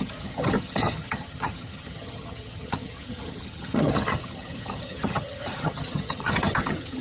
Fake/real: fake